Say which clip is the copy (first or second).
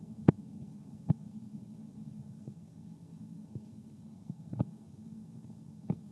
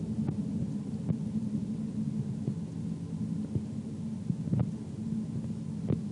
first